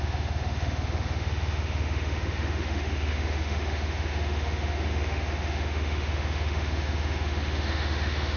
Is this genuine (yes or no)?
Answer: no